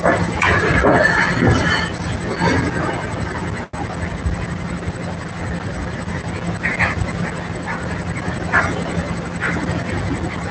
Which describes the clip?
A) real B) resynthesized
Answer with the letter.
A